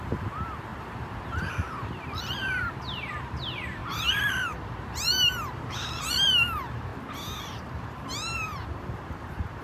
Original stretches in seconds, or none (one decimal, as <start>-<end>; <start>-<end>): 6.9-7.4